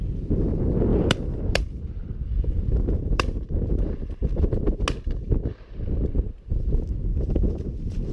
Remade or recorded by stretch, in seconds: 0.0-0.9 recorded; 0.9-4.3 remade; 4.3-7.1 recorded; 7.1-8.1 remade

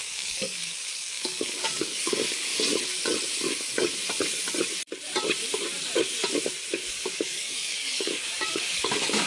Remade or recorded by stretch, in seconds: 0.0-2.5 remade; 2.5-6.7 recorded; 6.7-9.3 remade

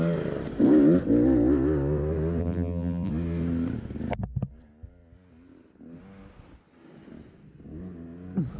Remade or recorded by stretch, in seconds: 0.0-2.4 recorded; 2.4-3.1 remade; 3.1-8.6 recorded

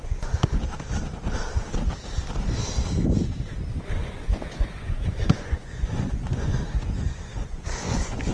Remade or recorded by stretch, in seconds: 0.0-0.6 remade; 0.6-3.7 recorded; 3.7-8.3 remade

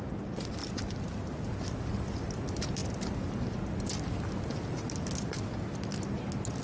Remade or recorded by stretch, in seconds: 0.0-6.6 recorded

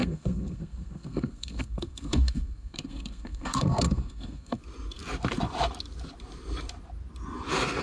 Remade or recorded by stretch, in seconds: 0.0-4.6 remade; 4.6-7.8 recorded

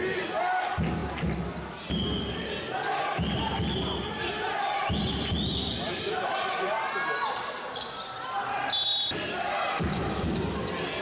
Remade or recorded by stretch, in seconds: 0.0-8.9 recorded; 8.9-10.5 remade; 10.5-11.0 recorded

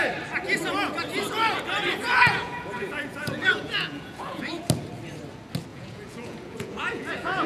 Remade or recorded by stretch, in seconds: 0.0-2.1 recorded; 2.1-4.5 remade; 4.5-5.7 recorded; 5.7-7.5 remade